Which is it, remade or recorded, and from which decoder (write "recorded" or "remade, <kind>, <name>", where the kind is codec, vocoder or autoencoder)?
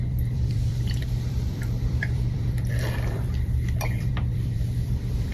remade, vocoder, BigVGAN v2